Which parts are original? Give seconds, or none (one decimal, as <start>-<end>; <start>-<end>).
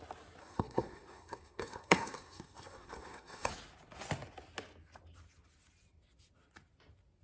0.0-0.4; 3.5-7.2